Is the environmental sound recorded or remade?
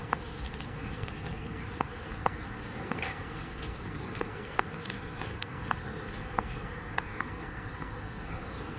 remade